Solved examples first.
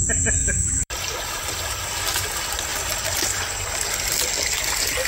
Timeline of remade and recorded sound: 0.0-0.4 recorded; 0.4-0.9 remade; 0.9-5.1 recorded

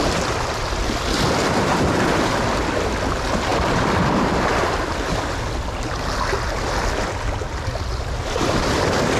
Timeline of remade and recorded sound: 0.0-9.2 recorded

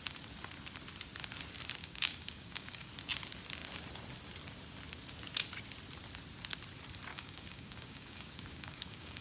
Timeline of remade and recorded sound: 0.0-1.8 recorded; 1.8-2.9 remade; 2.9-7.1 recorded; 7.1-9.2 remade

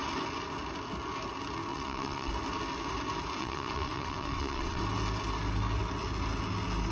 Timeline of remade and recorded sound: 0.0-1.7 recorded; 1.7-2.3 remade; 2.3-3.4 recorded; 3.4-4.8 remade; 4.8-6.9 recorded

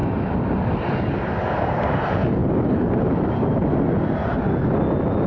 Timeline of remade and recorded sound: 0.0-5.3 recorded

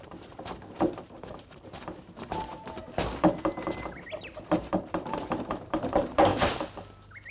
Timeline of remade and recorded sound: 0.0-2.8 remade; 2.8-4.4 recorded; 4.4-6.3 remade; 6.3-7.3 recorded

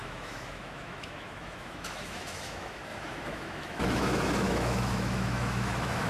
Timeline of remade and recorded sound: 0.0-6.1 remade